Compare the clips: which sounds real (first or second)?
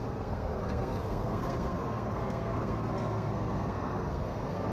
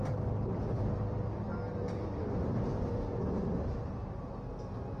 second